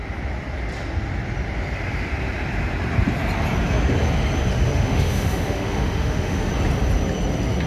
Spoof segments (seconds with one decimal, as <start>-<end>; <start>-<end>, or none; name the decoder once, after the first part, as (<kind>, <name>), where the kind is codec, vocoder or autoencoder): 4.5-6.5 (autoencoder, DAC-VAE)